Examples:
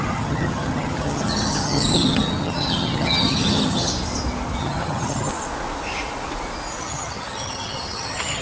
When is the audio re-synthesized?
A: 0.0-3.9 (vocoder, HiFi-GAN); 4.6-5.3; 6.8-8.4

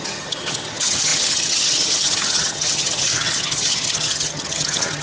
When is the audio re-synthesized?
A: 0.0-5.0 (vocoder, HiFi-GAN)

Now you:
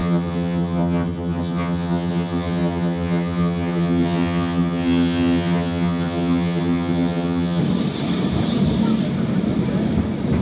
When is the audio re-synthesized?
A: 0.0-7.6 (vocoder, HiFi-GAN)